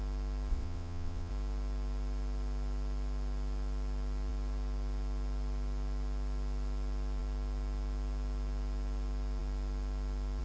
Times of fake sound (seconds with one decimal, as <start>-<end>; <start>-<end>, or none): 0.5-1.3